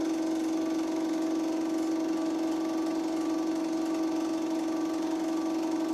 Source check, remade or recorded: recorded